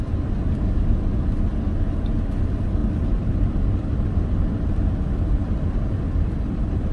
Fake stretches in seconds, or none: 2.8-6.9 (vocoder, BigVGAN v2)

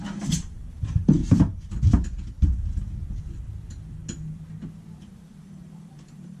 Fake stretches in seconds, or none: 0.0-1.2 (vocoder, BigVGAN v2); 5.0-6.4

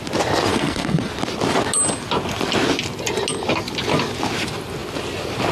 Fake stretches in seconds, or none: 0.5-1.1 (codec, SNAC)

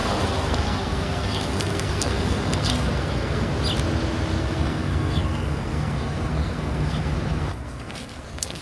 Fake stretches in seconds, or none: 0.0-3.5 (codec, SNAC); 4.4-8.6

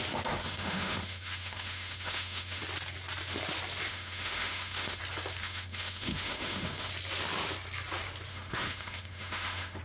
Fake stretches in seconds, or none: 0.4-2.6 (autoencoder, DAC-VAE); 3.9-5.0; 5.4-6.9; 8.3-9.8

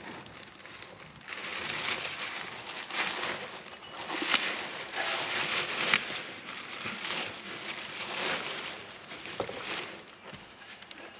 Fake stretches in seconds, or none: none

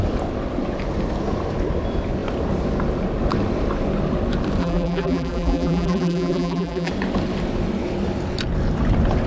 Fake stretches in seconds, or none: 4.6-6.9 (vocoder, BigVGAN v2)

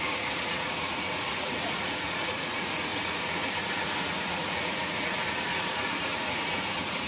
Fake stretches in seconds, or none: 0.0-7.1 (vocoder, Vocos)